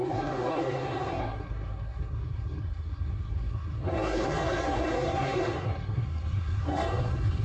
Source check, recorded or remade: remade